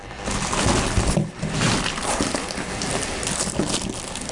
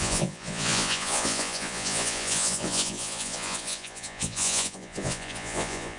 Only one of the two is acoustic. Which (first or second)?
first